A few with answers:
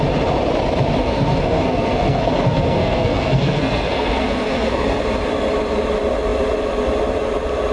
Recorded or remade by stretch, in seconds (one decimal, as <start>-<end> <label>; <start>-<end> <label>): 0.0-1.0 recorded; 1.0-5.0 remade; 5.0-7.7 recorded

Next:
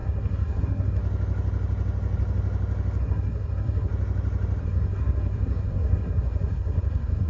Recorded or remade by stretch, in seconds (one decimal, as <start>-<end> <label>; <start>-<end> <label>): 0.0-1.0 remade; 1.0-3.0 recorded; 3.0-3.9 remade; 3.9-4.6 recorded; 4.6-7.3 remade

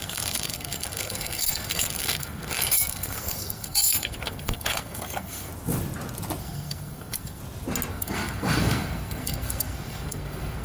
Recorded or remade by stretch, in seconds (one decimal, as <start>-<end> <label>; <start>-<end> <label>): 0.0-5.5 remade; 5.5-6.4 recorded; 6.4-7.4 remade; 7.4-7.9 recorded; 7.9-10.6 remade

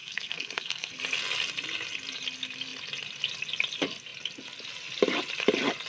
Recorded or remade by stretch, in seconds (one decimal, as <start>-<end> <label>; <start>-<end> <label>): 0.0-0.9 remade; 0.9-5.9 recorded

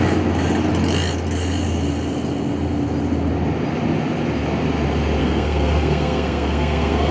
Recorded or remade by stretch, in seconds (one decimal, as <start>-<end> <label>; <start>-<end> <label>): 0.0-5.2 recorded; 5.2-7.1 remade